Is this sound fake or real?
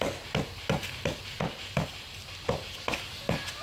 real